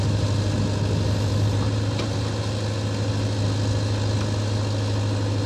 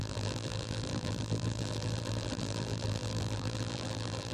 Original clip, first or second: first